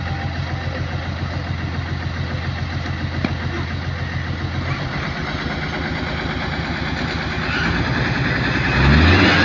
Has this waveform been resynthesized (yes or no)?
no